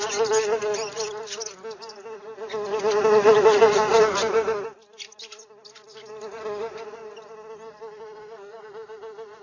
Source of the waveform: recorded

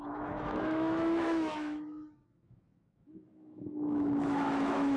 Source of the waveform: remade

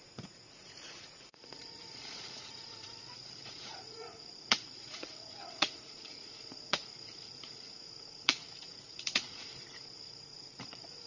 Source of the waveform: remade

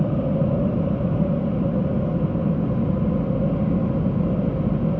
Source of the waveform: recorded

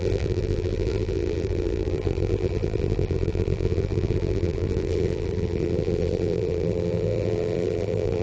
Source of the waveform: remade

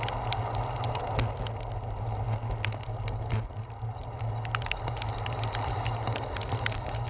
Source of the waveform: recorded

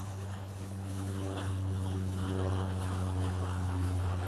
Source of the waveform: remade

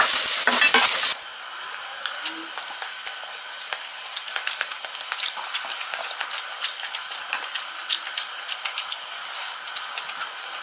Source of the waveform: recorded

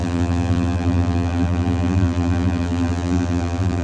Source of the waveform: remade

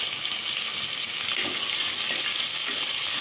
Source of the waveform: recorded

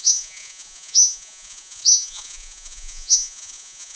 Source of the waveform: remade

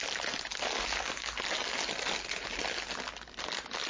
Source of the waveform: recorded